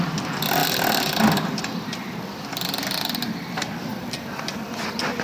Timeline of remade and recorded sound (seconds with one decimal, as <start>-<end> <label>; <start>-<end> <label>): 0.0-5.2 remade